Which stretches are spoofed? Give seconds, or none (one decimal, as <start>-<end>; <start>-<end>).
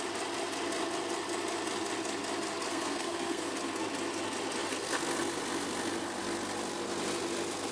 2.7-3.5